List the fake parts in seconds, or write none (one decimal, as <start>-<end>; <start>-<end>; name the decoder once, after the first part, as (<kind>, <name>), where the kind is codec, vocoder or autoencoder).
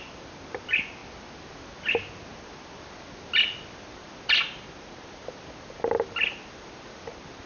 none